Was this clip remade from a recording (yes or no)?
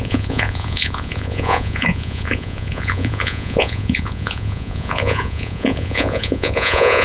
yes